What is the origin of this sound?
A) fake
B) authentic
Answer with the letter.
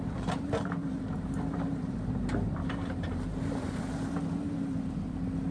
A